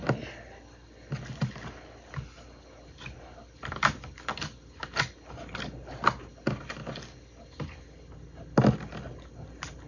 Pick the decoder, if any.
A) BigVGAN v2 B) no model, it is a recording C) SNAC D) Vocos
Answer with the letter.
B